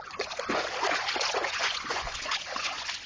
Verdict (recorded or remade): remade